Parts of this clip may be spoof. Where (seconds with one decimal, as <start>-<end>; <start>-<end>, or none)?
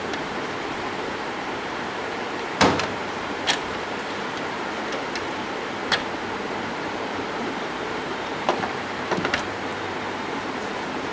0.0-5.9; 6.6-9.7; 10.2-11.1